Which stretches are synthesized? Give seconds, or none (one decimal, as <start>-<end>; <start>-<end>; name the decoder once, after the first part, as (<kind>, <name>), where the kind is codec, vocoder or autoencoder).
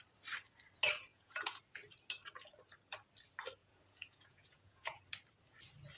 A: 1.1-1.6 (vocoder, Vocos); 3.6-5.0